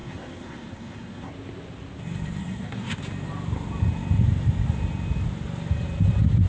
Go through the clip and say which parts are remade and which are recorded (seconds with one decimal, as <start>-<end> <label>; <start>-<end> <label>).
0.0-1.3 remade; 1.3-2.4 recorded; 2.4-3.0 remade; 3.0-6.5 recorded